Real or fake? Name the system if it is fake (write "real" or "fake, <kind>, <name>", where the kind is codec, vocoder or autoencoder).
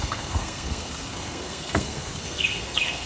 fake, codec, SNAC